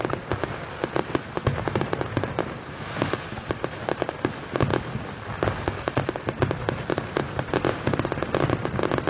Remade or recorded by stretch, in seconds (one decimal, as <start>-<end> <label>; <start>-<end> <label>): 0.0-9.1 recorded